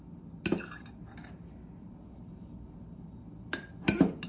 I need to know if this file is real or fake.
real